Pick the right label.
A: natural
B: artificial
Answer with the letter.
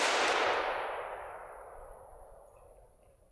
B